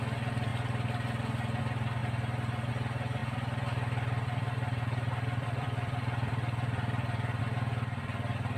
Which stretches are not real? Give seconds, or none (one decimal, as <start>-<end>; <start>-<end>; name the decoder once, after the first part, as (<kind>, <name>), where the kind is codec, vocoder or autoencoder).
3.2-7.4 (vocoder, BigVGAN v2)